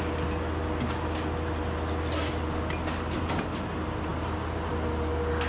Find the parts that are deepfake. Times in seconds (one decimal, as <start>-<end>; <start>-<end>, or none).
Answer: none